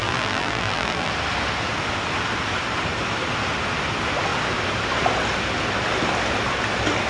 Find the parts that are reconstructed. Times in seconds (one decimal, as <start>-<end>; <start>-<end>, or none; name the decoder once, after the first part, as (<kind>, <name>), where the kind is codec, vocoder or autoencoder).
0.0-1.1 (vocoder, BigVGAN v2)